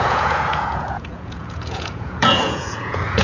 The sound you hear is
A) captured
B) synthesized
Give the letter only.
B